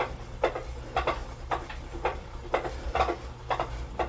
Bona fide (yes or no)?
yes